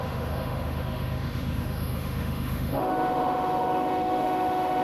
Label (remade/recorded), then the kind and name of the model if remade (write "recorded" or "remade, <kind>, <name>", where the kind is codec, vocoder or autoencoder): remade, autoencoder, DAC-VAE